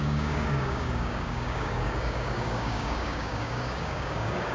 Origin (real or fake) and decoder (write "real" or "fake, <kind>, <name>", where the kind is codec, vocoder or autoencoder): fake, codec, DAC